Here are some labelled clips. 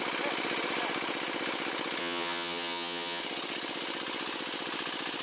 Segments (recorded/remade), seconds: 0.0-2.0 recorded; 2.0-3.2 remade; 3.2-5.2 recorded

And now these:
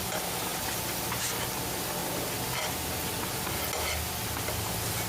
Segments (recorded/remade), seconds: 0.0-2.0 remade; 2.0-5.1 recorded

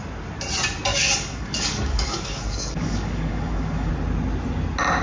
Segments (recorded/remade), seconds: 0.0-0.9 recorded; 0.9-3.9 remade; 3.9-5.0 recorded

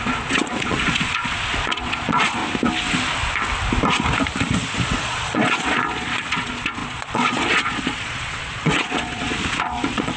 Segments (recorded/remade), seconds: 0.0-2.4 remade; 2.4-5.0 recorded; 5.0-10.2 remade